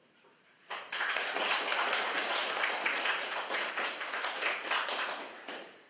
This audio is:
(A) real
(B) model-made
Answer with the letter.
B